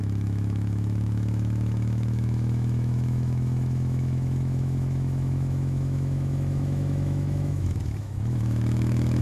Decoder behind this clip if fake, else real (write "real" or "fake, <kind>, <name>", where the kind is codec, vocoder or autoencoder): fake, autoencoder, DAC-VAE